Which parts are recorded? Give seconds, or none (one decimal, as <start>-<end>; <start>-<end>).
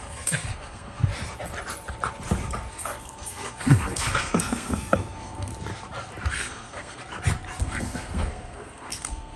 1.1-2.7; 5.5-6.3; 7.0-7.6